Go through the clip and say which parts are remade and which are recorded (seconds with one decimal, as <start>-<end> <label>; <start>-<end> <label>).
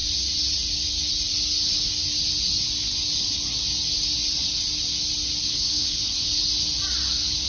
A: 0.0-5.5 recorded; 5.5-6.3 remade; 6.3-7.5 recorded